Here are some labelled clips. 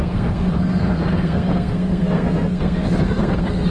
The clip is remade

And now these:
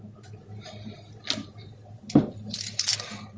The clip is recorded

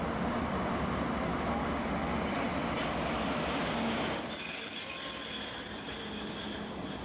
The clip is recorded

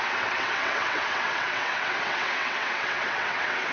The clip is remade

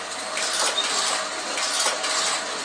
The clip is recorded